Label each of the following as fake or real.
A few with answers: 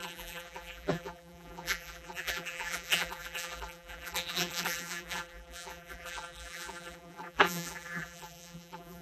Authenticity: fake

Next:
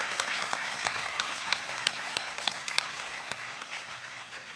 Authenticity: fake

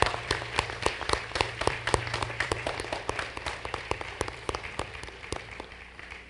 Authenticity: fake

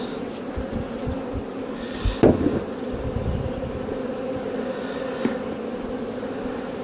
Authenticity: real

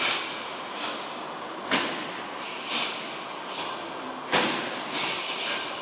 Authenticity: real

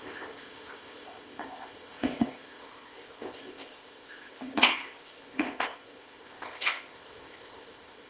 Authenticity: fake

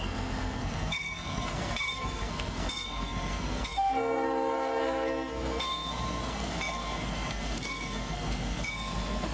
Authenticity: fake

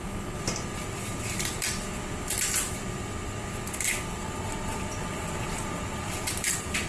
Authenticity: fake